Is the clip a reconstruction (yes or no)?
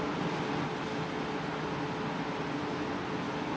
no